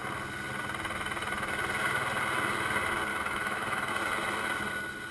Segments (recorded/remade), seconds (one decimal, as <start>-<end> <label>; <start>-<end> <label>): 0.0-3.1 recorded; 3.1-3.9 remade; 3.9-5.1 recorded